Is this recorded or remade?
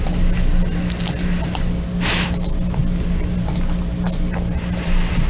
recorded